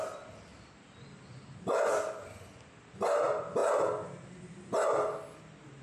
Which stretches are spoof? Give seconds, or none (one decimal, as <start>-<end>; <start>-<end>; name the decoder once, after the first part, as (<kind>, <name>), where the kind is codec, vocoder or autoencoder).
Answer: none